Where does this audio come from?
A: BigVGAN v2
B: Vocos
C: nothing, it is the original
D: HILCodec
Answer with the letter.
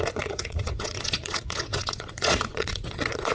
B